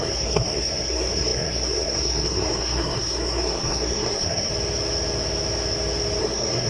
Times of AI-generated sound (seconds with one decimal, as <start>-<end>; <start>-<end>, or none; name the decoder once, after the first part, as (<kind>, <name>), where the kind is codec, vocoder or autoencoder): 0.0-4.5 (codec, SNAC); 6.2-6.7